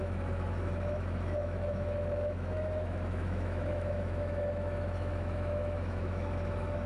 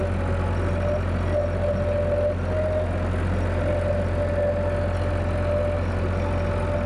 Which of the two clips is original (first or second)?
second